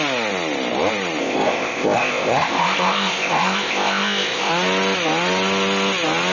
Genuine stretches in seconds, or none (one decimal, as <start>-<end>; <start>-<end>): 0.0-1.2; 4.5-6.3